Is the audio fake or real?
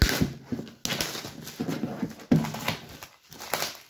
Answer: real